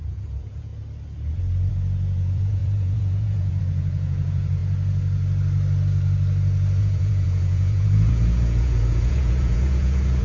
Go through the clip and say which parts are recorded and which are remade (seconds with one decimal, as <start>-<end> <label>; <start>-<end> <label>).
0.0-0.7 remade; 0.7-1.7 recorded; 1.7-4.6 remade; 4.6-6.8 recorded; 6.8-10.2 remade